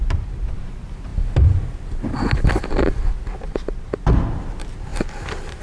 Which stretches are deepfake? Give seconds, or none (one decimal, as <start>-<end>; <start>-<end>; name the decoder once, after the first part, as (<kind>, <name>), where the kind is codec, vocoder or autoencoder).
none